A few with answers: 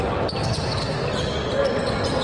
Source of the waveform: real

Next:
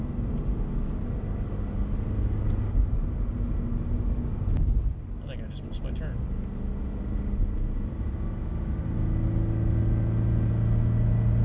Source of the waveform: real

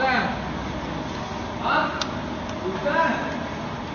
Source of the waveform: real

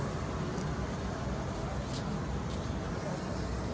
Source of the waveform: real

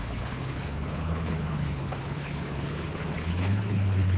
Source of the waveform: fake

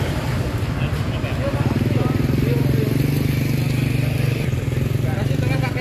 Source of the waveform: real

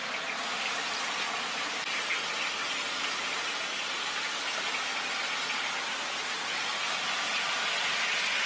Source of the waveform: real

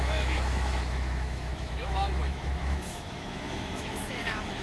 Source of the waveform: fake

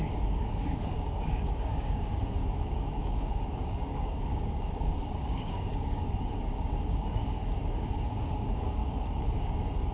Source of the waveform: fake